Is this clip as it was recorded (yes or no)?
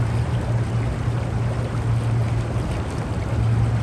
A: yes